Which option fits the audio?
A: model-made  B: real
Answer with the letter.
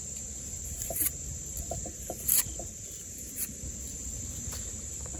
A